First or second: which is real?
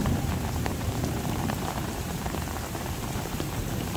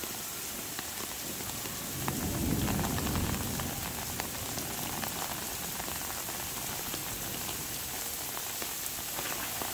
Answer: second